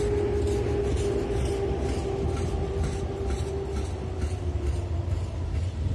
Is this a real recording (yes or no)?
yes